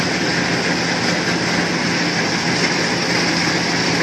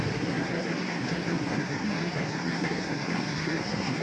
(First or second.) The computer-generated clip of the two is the second